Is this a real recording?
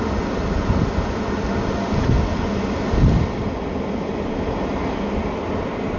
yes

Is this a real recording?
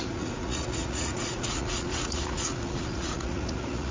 no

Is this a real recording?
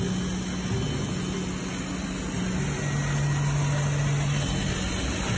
yes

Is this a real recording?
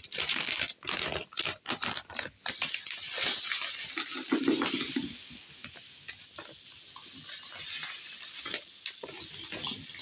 yes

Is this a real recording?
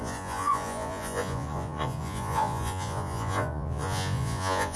no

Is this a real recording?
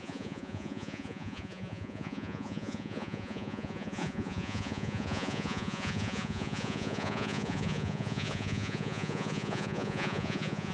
no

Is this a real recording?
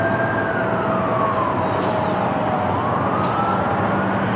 yes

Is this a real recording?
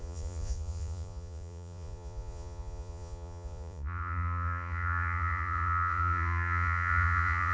no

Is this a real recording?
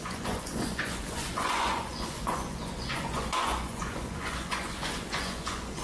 no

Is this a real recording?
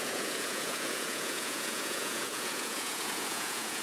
no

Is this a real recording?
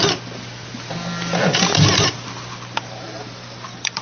yes